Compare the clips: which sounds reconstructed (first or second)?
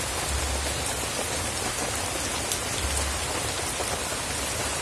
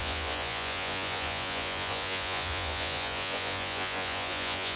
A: second